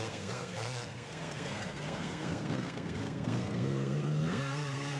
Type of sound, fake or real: fake